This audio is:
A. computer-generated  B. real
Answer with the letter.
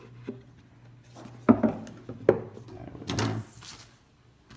B